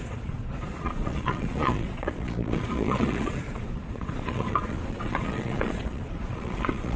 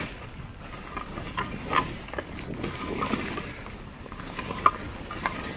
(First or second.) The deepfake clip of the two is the first